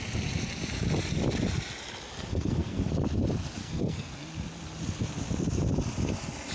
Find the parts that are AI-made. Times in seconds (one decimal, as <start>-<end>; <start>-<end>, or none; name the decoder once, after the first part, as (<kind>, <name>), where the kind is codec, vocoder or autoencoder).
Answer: 2.1-2.9 (codec, SNAC); 3.6-4.1